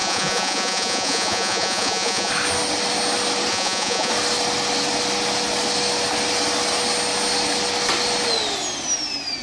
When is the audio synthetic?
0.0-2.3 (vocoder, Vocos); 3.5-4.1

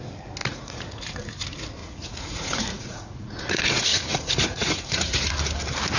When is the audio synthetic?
0.4-1.0 (vocoder, Vocos); 1.8-5.3